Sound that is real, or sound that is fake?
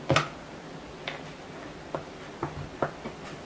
real